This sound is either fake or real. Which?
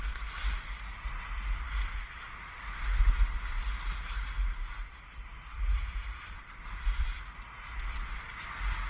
real